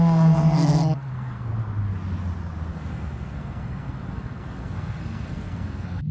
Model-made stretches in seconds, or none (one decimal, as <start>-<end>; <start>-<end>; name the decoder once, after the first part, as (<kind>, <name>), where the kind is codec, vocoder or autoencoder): 0.0-1.5 (codec, SNAC); 2.7-6.1